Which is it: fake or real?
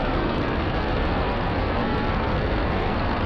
fake